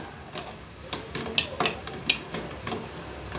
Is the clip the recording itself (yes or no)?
yes